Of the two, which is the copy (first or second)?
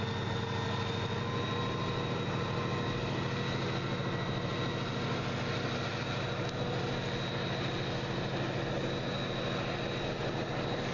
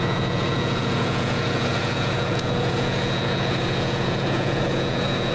second